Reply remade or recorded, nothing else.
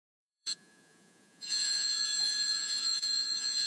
remade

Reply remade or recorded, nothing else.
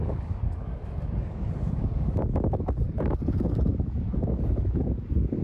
remade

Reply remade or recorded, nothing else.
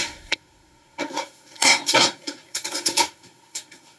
remade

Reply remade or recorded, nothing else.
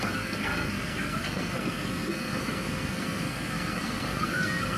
remade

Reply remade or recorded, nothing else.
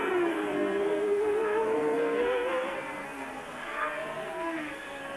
remade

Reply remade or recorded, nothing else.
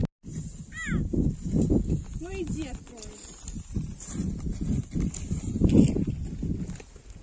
recorded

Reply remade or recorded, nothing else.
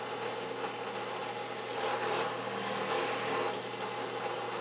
recorded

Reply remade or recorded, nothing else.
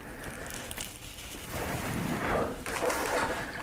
recorded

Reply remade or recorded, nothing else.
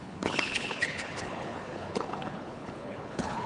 remade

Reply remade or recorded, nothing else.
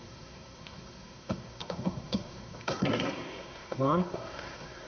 remade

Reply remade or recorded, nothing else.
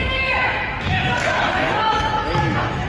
remade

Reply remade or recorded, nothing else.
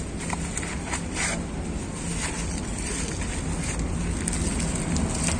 recorded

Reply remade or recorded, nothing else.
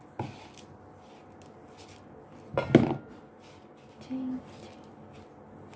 recorded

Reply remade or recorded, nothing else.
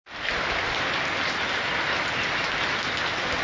recorded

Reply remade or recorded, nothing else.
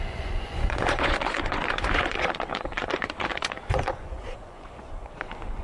remade